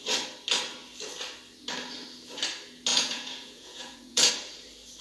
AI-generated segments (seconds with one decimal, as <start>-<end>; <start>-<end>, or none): 2.9-4.3